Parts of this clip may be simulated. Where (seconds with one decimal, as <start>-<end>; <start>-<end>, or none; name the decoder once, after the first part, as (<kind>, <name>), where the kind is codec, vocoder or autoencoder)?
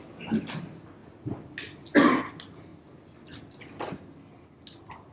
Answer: none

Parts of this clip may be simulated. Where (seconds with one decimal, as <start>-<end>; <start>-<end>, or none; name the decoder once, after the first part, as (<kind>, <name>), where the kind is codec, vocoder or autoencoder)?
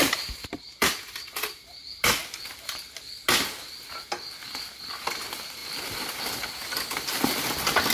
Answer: 0.0-0.9 (vocoder, BigVGAN v2)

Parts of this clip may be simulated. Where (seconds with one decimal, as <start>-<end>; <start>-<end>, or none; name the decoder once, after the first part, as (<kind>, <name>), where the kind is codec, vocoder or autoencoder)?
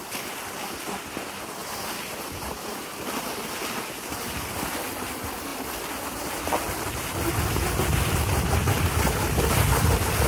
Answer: 1.6-5.1 (vocoder, BigVGAN v2)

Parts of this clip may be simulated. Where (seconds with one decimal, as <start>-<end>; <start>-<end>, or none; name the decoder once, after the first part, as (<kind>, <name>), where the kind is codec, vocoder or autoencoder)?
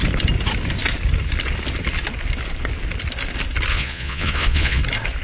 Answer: 3.7-4.8 (vocoder, Vocos)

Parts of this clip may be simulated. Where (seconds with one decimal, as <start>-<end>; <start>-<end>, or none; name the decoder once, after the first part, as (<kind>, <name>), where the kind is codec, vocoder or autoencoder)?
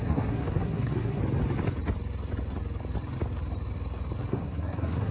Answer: 0.0-1.2 (codec, SNAC); 4.3-5.1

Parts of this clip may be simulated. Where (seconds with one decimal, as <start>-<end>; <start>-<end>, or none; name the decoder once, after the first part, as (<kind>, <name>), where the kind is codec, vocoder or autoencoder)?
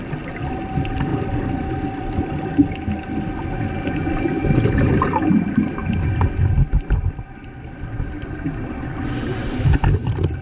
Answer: none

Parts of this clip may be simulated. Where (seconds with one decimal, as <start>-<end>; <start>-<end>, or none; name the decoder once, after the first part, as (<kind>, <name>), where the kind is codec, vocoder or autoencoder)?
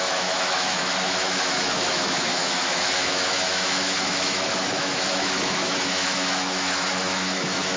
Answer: 0.0-7.8 (autoencoder, DAC-VAE)